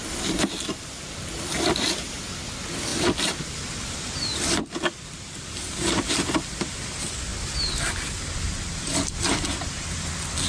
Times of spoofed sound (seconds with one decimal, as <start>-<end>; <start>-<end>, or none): 2.9-6.1